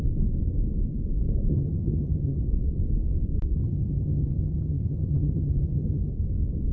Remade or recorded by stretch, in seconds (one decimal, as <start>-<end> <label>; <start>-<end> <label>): 0.0-1.5 recorded; 1.5-2.4 remade; 2.4-3.6 recorded; 3.6-6.1 remade; 6.1-6.7 recorded

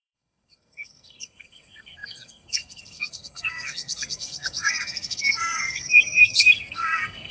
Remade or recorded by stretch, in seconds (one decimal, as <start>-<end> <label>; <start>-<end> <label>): 0.0-7.3 remade

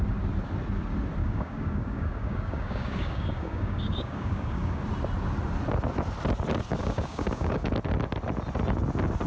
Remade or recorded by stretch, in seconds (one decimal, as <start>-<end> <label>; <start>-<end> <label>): 0.0-1.2 recorded; 1.2-4.8 remade; 4.8-6.8 recorded; 6.8-7.7 remade; 7.7-9.3 recorded